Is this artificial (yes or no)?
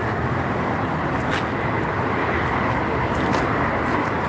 no